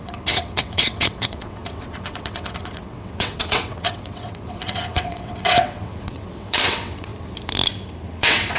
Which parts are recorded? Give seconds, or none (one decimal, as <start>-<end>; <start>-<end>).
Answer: 7.1-8.1